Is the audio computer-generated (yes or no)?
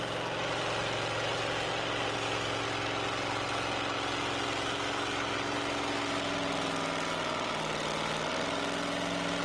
no